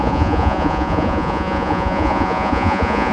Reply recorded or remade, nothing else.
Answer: remade